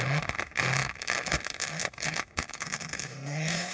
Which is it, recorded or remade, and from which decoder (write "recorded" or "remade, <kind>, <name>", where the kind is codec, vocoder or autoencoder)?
remade, autoencoder, DAC-VAE